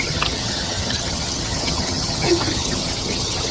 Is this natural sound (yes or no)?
no